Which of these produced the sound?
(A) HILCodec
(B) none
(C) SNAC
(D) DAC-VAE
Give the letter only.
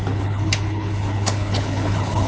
A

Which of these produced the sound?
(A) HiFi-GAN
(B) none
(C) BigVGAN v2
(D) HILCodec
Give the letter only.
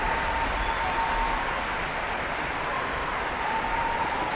B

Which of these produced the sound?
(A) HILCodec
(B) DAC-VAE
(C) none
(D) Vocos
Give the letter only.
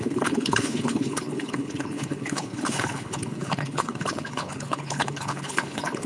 A